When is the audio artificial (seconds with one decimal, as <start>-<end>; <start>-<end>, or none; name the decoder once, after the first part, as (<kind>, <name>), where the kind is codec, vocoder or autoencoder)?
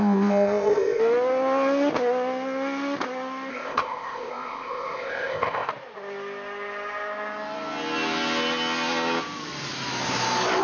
0.0-1.0 (codec, ZipCodec); 3.5-5.7